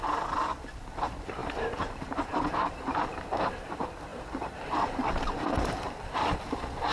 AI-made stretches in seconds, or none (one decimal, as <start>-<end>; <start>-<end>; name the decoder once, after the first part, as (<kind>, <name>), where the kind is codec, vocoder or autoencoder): 1.4-3.2 (vocoder, BigVGAN v2); 4.1-6.5